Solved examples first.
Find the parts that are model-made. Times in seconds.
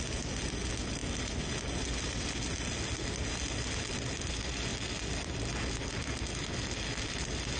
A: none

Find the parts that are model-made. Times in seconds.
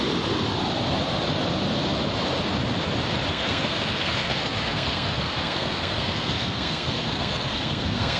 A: 3.3-8.2 (codec, SNAC)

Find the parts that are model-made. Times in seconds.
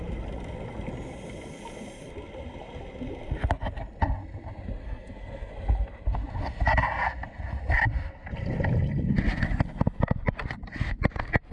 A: 4.8-5.5 (codec, SNAC)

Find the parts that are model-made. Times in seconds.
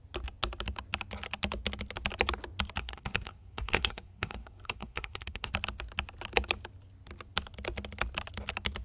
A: 2.8-5.5 (codec, SNAC)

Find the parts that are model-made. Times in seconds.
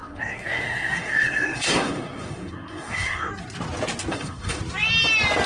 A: 0.0-3.3 (codec, SNAC); 4.1-4.6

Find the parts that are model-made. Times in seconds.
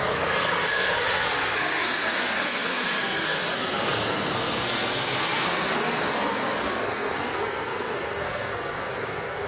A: 0.0-9.5 (codec, SNAC)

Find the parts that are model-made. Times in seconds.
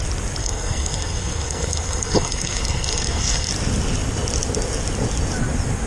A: 0.4-3.5 (codec, SNAC)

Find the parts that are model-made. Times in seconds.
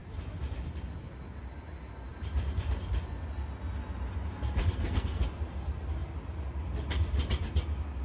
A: 4.6-5.2 (codec, SNAC)